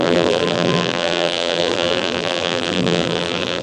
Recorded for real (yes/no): no